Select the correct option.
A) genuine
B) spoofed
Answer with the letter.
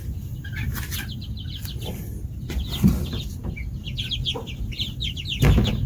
A